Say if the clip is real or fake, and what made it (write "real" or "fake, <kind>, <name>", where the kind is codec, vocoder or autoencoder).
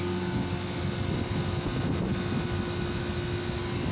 real